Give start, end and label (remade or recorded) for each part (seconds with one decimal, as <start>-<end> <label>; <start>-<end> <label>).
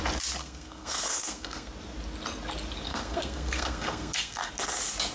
0.0-0.4 recorded; 0.4-1.7 remade; 1.7-2.9 recorded; 2.9-4.5 remade; 4.5-5.1 recorded